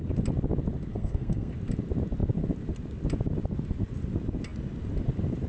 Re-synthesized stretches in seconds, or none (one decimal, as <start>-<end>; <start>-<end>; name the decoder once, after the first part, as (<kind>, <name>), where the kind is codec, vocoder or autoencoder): 0.9-1.5 (codec, SNAC)